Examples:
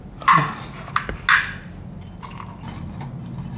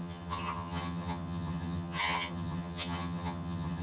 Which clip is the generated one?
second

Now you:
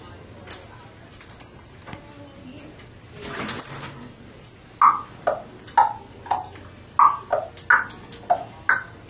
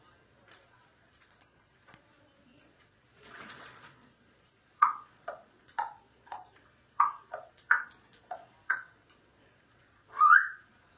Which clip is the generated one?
second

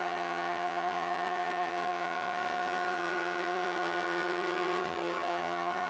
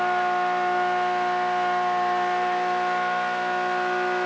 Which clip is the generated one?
first